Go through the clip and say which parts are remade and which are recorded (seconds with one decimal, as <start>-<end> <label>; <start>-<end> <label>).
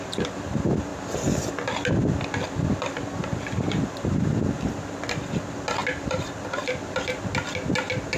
0.0-0.9 recorded; 0.9-1.5 remade; 1.5-5.8 recorded; 5.8-6.4 remade; 6.4-8.2 recorded